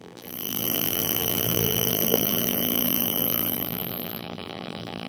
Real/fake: fake